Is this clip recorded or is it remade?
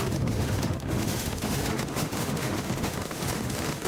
remade